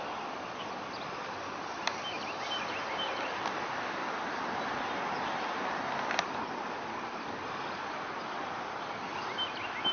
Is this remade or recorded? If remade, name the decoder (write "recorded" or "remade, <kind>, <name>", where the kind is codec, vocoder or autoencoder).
recorded